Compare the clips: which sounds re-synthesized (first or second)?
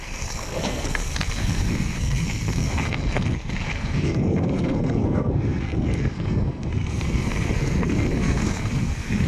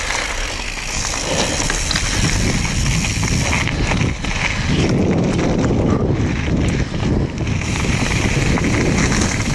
first